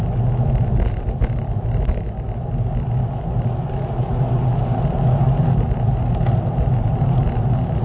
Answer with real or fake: real